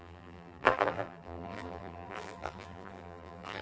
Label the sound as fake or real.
fake